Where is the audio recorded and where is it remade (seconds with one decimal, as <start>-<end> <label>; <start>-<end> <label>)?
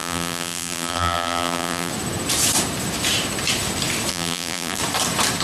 0.0-1.9 remade; 1.9-4.1 recorded; 4.1-4.8 remade; 4.8-5.4 recorded